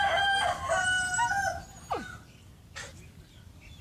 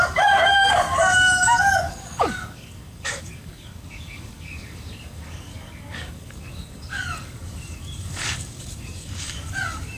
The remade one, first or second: second